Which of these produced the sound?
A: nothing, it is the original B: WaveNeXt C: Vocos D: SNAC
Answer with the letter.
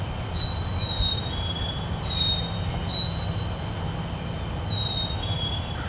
A